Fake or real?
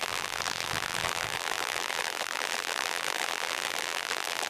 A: fake